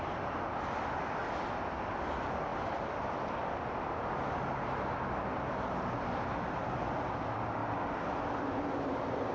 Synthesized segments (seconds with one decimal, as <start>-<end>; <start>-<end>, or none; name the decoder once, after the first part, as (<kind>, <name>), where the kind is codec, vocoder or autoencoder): none